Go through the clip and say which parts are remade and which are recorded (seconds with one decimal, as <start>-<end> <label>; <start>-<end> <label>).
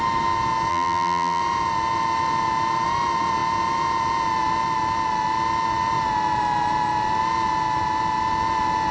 0.0-0.7 recorded; 0.7-1.4 remade; 1.4-8.9 recorded